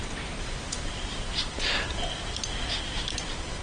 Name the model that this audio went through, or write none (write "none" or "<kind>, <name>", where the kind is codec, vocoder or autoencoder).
none